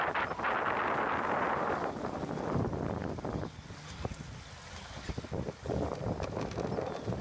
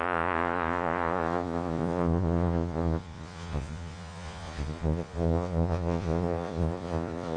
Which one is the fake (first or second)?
second